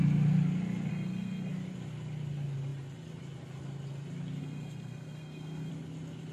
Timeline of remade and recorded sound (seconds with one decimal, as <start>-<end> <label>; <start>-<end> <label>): 0.0-0.9 recorded; 0.9-1.5 remade; 1.5-4.4 recorded; 4.4-5.7 remade; 5.7-6.3 recorded